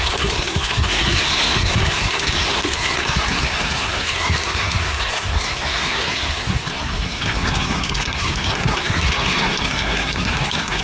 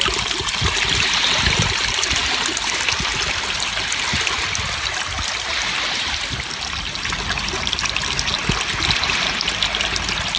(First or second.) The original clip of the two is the second